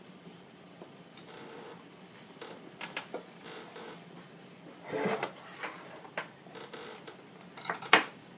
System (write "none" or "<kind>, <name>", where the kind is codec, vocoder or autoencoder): none